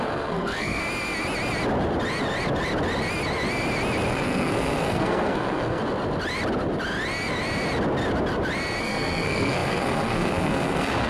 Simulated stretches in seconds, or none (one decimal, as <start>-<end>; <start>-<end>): 0.0-0.8; 4.1-5.8; 8.8-11.1